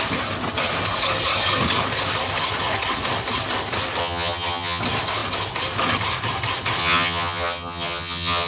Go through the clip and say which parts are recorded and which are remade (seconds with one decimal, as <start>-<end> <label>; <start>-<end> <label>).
0.0-4.0 recorded; 4.0-4.8 remade; 4.8-6.8 recorded; 6.8-8.5 remade